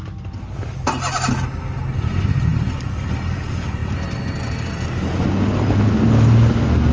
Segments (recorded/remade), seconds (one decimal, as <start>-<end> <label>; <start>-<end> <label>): 0.0-6.9 recorded